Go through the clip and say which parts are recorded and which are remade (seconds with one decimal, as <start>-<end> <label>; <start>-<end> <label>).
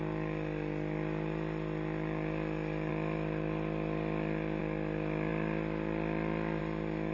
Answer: 0.0-7.1 recorded